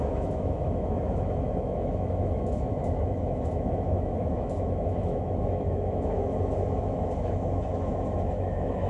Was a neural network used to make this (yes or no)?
yes